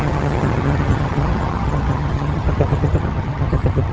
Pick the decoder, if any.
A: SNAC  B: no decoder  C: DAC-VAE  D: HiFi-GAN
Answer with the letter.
D